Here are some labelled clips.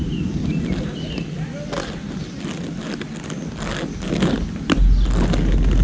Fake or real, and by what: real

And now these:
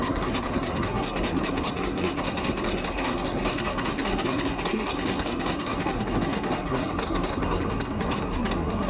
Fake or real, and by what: fake, codec, SNAC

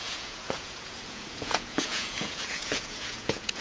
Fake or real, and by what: fake, vocoder, Vocos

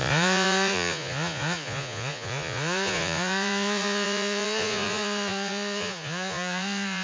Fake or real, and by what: fake, vocoder, Vocos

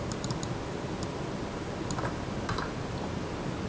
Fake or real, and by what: real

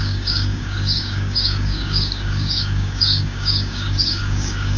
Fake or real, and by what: fake, codec, DAC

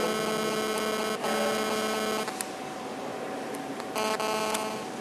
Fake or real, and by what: real